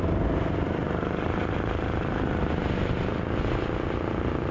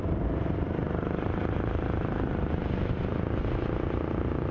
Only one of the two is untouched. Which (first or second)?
first